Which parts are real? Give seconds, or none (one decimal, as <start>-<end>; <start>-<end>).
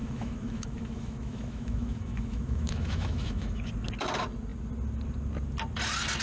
3.7-6.2